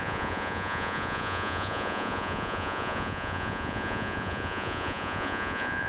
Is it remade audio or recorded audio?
remade